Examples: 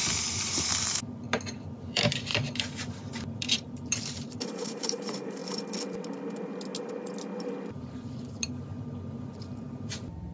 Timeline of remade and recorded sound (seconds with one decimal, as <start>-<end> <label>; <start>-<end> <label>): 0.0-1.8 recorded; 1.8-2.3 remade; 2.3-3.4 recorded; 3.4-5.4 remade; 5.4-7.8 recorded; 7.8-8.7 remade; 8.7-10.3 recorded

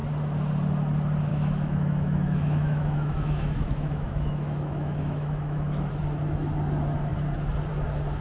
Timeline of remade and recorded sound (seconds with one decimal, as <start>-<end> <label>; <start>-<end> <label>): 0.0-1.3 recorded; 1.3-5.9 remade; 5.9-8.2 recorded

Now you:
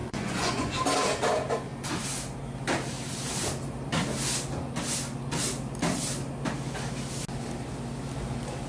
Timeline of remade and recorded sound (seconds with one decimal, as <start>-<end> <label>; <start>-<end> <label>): 0.0-0.7 remade; 0.7-8.7 recorded

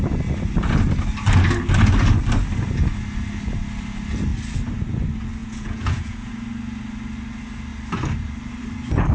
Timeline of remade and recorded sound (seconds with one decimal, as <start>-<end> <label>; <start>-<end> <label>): 0.0-5.4 recorded; 5.4-6.3 remade; 6.3-9.1 recorded

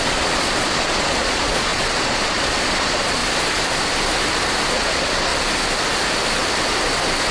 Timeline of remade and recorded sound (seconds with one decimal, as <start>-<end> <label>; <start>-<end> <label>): 0.0-3.2 remade; 3.2-4.7 recorded; 4.7-5.3 remade; 5.3-7.3 recorded

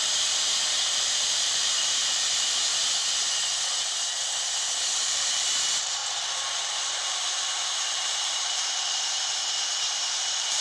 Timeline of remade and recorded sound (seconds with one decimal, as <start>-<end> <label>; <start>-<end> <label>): 0.0-2.7 remade; 2.7-5.0 recorded; 5.0-6.0 remade; 6.0-6.6 recorded; 6.6-9.4 remade; 9.4-10.1 recorded; 10.1-10.6 remade